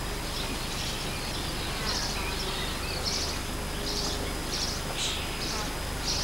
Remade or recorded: recorded